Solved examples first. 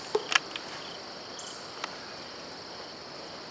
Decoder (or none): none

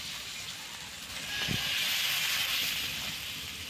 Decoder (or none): none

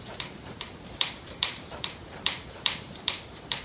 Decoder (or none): vocoder, BigVGAN v2